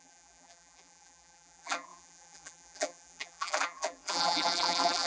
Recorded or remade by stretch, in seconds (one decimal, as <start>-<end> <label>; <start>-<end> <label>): 0.0-5.1 remade